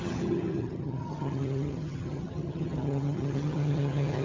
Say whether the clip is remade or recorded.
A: remade